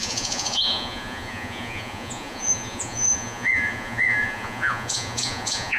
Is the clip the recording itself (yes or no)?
no